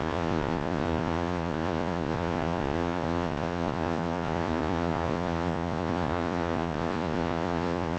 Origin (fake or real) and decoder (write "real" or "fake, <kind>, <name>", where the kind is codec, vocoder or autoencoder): fake, vocoder, Vocos